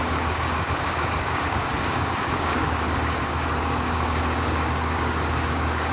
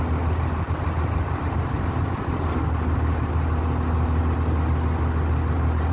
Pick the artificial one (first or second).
first